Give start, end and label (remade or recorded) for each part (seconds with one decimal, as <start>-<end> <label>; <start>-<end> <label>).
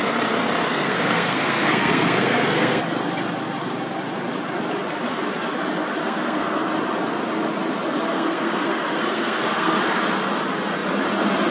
0.0-0.7 recorded; 0.7-2.8 remade; 2.8-6.0 recorded; 6.0-6.6 remade; 6.6-8.1 recorded; 8.1-9.8 remade; 9.8-11.5 recorded